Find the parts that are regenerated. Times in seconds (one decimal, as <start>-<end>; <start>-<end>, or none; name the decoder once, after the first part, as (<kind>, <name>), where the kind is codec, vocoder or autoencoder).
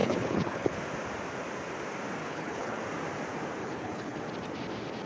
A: 0.0-0.8 (codec, HILCodec); 2.2-2.8; 3.6-4.2